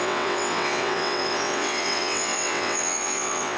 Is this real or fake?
fake